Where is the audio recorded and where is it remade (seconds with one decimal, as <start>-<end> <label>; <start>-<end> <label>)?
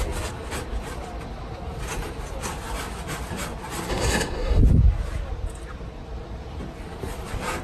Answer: 0.0-3.9 recorded; 3.9-4.6 remade; 4.6-7.6 recorded